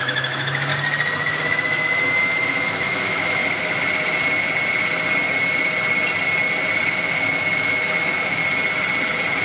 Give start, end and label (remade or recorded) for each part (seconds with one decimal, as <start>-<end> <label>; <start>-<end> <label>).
0.0-0.7 remade; 0.7-1.4 recorded; 1.4-3.4 remade; 3.4-6.9 recorded; 6.9-8.4 remade; 8.4-9.4 recorded